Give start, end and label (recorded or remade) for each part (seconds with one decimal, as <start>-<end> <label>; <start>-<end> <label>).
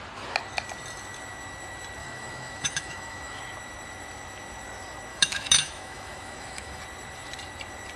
0.0-2.0 recorded; 2.0-3.4 remade; 3.4-5.1 recorded; 5.1-6.8 remade; 6.8-8.0 recorded